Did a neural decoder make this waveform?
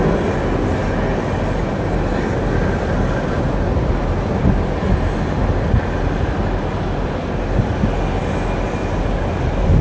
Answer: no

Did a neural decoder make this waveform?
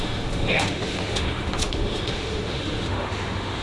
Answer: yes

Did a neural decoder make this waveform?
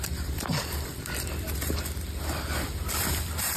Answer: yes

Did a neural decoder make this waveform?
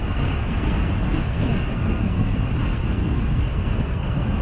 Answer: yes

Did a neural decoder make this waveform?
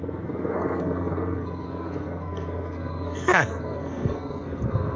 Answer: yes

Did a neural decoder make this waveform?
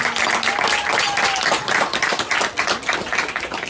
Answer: no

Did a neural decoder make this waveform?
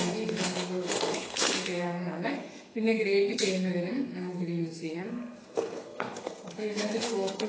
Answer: yes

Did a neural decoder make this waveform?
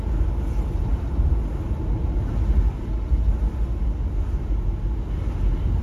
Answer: no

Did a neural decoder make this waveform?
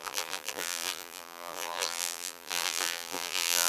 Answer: yes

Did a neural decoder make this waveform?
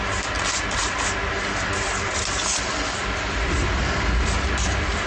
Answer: yes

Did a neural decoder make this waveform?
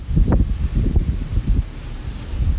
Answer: yes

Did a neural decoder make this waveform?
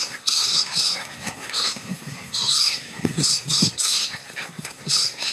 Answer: yes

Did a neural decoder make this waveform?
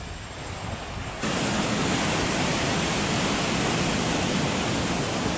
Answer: no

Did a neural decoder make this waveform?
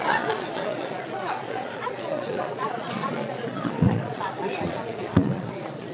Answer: yes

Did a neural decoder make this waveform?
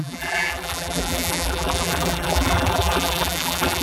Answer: yes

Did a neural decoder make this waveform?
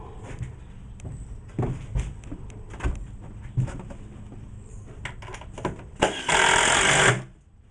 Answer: no